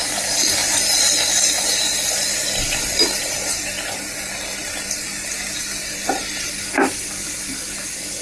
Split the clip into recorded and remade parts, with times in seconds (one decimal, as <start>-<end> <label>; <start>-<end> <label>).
0.0-8.2 recorded